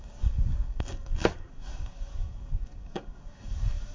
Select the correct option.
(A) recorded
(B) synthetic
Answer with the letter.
B